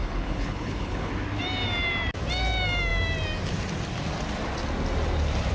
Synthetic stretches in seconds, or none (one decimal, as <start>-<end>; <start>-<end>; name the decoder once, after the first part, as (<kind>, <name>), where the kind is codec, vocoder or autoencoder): 0.0-1.1 (codec, HILCodec)